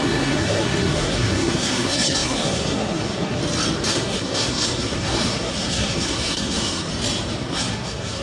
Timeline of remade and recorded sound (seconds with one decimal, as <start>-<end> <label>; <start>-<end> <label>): 0.0-3.4 remade; 3.4-3.9 recorded; 3.9-6.9 remade; 6.9-7.4 recorded; 7.4-8.2 remade